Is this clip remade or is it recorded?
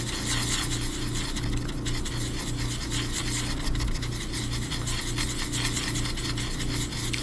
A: recorded